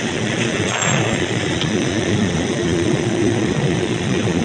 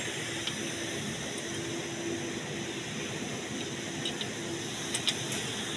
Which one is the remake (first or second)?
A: first